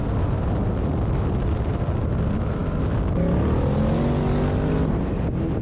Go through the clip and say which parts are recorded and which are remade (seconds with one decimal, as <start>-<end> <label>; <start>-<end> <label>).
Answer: 0.0-5.6 recorded